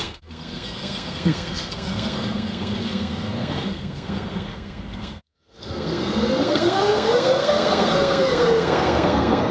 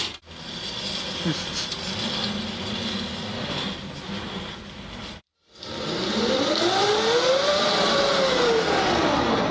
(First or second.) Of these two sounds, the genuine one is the second